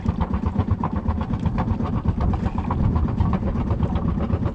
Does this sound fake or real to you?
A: fake